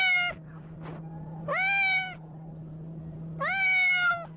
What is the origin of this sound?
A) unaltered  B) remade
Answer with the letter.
A